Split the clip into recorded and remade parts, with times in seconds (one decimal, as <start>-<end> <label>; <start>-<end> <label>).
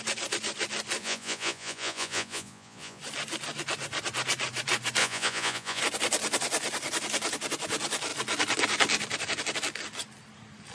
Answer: 0.0-1.0 recorded; 1.0-3.0 remade; 3.0-5.0 recorded; 5.0-5.8 remade; 5.8-10.7 recorded